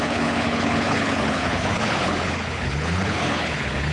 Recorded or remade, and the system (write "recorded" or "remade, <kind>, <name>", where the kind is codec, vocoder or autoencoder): remade, codec, HILCodec